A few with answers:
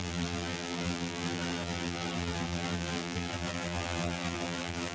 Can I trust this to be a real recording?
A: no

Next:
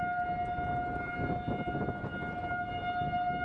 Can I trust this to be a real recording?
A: yes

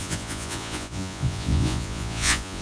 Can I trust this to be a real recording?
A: no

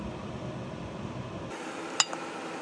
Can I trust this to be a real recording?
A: yes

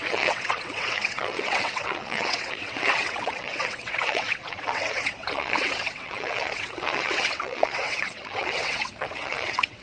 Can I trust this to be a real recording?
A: no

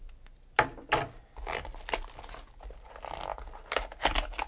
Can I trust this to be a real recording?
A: yes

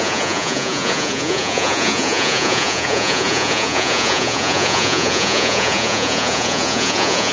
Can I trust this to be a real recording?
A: no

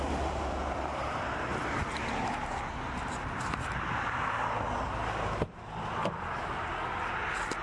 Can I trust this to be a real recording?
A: yes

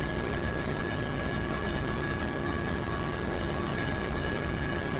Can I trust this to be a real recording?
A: no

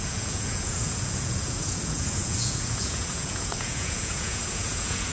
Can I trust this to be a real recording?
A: no